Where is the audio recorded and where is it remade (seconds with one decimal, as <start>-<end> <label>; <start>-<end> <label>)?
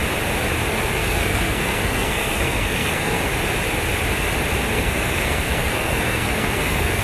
0.0-0.7 recorded; 0.7-3.3 remade; 3.3-4.7 recorded; 4.7-7.0 remade